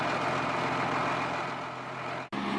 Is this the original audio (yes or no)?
yes